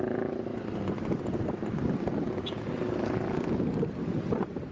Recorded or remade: recorded